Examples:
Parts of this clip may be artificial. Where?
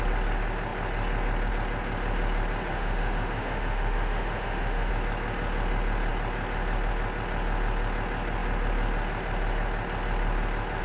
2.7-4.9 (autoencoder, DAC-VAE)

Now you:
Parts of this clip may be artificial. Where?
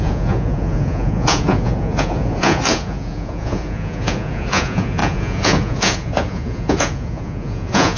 0.0-8.0 (vocoder, Vocos)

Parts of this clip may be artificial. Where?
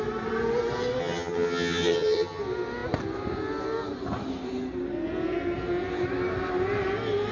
1.0-2.4 (vocoder, HiFi-GAN)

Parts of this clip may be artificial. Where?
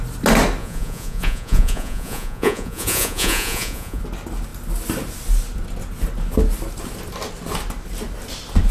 0.6-4.0 (vocoder, Vocos)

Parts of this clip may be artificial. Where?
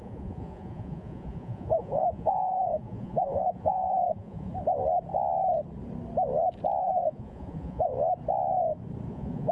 0.0-4.5 (vocoder, Vocos); 6.8-7.9; 9.1-9.5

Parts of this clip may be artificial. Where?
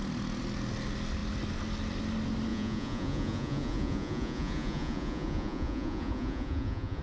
2.5-7.0 (vocoder, Vocos)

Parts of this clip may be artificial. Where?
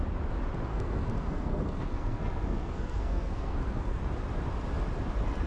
0.7-4.0 (codec, SNAC)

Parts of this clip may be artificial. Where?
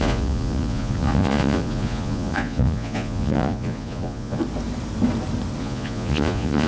0.0-4.4 (vocoder, Vocos); 5.6-6.7